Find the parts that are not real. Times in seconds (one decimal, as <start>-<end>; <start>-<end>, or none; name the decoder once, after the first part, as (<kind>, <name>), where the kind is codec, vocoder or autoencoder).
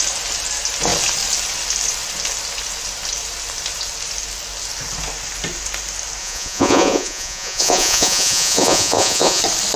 6.2-9.4 (vocoder, Vocos)